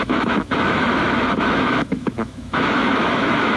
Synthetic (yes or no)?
yes